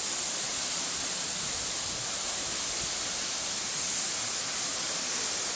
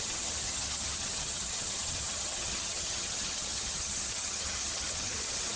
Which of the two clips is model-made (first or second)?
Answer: second